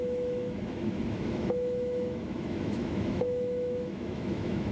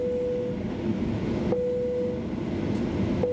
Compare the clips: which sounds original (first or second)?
second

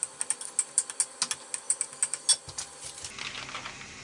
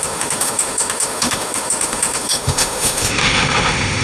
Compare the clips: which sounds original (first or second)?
first